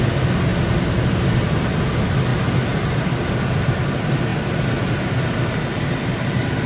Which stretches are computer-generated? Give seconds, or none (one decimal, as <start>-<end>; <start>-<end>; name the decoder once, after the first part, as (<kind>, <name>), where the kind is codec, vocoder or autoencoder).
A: none